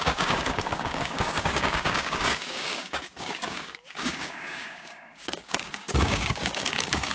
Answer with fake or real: fake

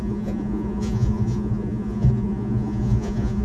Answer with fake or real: fake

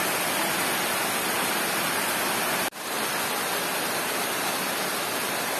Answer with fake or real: real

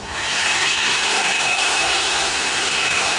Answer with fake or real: fake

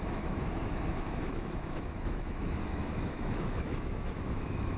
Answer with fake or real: fake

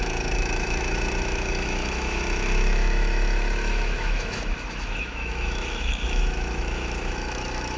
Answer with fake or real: fake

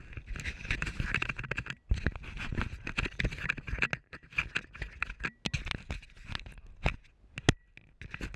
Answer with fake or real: real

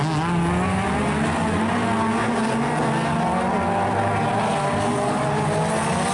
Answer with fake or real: real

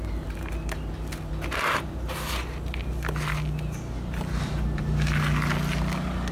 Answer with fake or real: real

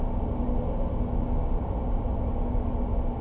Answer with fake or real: real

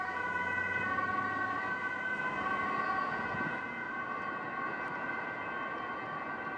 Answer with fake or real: real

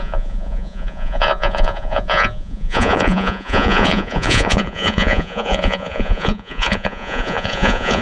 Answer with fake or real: fake